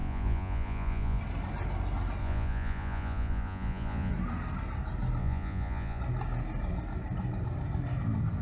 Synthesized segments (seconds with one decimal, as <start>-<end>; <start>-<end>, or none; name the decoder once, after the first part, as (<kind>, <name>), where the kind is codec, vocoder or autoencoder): 0.0-1.2 (vocoder, Vocos); 2.2-4.1; 5.2-6.0